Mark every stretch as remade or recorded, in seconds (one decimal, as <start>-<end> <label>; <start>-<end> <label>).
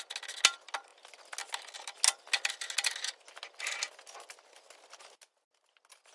0.0-6.1 recorded